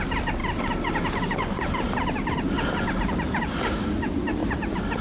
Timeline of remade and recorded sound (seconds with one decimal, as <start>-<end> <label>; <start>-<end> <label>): 0.0-5.0 recorded